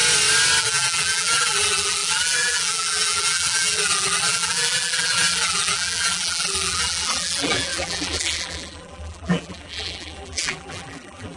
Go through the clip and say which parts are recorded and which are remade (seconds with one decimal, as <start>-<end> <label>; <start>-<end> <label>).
0.0-0.6 recorded; 0.6-11.4 remade